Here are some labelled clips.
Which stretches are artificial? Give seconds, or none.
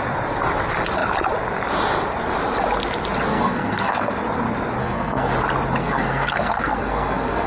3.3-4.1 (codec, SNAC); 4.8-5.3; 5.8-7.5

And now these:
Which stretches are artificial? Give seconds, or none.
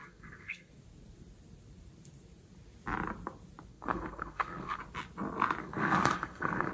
0.0-0.7 (codec, SNAC); 3.7-4.8; 5.6-6.7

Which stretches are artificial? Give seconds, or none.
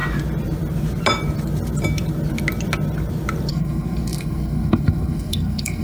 3.5-5.8 (codec, SNAC)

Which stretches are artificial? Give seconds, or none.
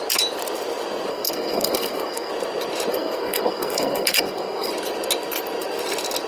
1.1-2.3 (codec, SNAC); 2.9-4.7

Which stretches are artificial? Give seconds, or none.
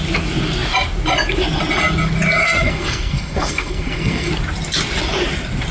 2.4-4.3 (codec, SNAC)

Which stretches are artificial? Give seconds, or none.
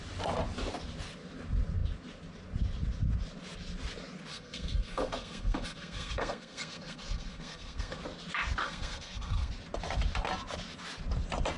4.3-8.0 (codec, SNAC); 8.6-9.5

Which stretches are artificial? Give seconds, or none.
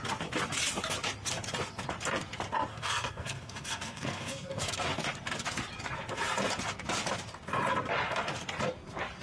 2.7-4.7 (codec, SNAC)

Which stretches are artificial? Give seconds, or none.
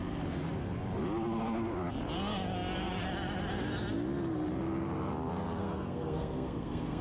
5.6-7.0 (codec, SNAC)